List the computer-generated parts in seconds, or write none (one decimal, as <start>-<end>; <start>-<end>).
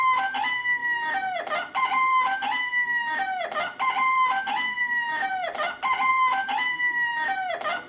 none